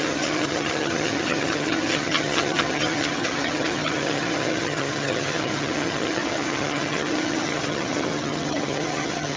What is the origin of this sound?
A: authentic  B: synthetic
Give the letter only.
B